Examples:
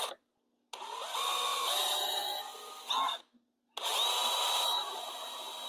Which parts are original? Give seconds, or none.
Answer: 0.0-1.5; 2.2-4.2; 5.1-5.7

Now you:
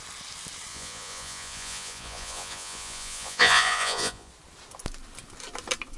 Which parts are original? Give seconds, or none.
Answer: 0.0-0.7; 4.3-6.0

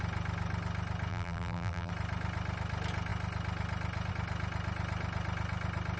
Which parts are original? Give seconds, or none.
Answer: 0.0-1.1; 1.9-6.0